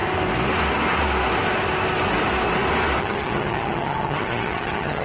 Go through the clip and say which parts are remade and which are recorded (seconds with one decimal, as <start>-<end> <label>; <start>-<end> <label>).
0.0-3.0 recorded; 3.0-5.0 remade